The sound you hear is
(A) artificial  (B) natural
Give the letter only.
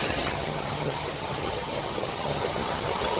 A